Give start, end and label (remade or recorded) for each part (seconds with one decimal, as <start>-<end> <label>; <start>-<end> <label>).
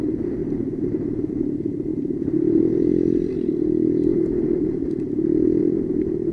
0.0-0.4 recorded; 0.4-1.3 remade; 1.3-1.9 recorded; 1.9-3.5 remade; 3.5-4.1 recorded; 4.1-5.1 remade; 5.1-5.6 recorded; 5.6-6.3 remade